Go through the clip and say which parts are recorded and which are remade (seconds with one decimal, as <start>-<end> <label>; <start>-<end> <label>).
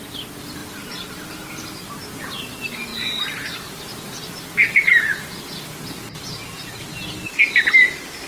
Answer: 0.0-8.3 recorded